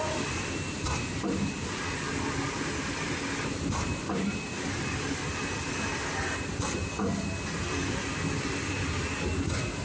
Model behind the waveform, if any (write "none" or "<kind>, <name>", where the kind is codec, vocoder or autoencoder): none